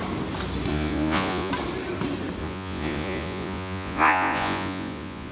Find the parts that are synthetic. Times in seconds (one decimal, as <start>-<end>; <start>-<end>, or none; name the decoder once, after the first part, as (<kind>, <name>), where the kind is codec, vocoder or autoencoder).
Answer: 0.7-1.5 (vocoder, Vocos); 2.4-5.3

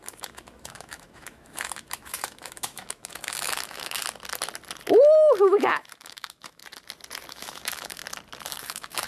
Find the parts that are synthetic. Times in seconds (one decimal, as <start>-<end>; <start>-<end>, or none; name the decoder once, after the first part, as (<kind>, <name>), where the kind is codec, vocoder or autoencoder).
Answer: 0.0-4.0 (autoencoder, DAC-VAE); 5.4-6.6; 7.3-8.0; 8.6-9.1

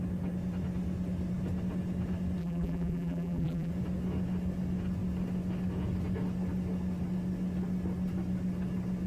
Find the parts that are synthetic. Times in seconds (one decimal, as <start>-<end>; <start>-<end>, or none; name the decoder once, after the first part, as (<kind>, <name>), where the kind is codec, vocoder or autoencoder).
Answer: 2.4-3.7 (vocoder, BigVGAN v2)

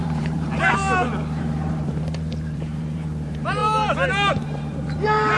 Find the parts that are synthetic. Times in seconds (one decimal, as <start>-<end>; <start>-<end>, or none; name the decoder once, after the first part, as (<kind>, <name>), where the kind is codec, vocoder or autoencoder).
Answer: 0.0-0.8 (vocoder, BigVGAN v2); 1.4-3.6; 4.3-5.4